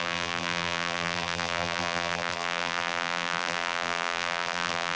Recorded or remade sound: remade